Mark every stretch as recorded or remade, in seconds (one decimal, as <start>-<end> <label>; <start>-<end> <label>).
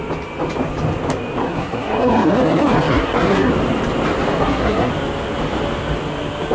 0.0-1.4 recorded; 1.4-3.5 remade; 3.5-4.4 recorded; 4.4-4.9 remade; 4.9-6.5 recorded